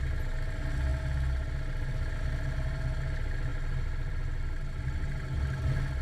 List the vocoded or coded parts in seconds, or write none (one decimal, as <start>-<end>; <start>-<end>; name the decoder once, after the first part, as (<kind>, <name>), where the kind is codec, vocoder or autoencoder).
none